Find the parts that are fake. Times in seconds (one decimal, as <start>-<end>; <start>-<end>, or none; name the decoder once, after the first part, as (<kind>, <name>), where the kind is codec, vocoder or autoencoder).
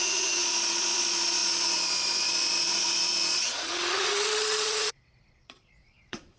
0.0-6.4 (vocoder, Vocos)